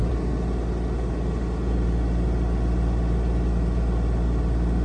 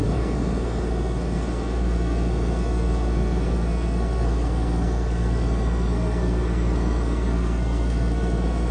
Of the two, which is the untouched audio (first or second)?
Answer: first